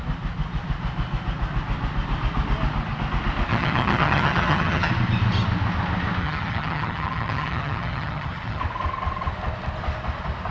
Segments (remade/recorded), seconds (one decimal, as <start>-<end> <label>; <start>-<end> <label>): 0.0-3.5 recorded; 3.5-4.9 remade; 4.9-6.2 recorded; 6.2-8.6 remade; 8.6-10.5 recorded